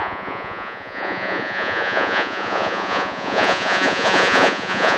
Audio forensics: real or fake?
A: fake